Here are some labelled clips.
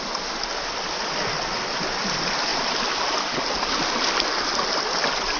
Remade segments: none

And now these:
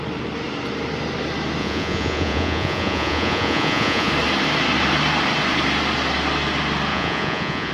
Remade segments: 1.6-4.1; 6.9-7.7